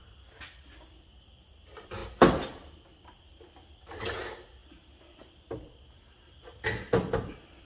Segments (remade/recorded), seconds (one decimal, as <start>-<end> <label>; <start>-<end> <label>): 0.0-2.0 recorded; 2.0-3.8 remade; 3.8-7.7 recorded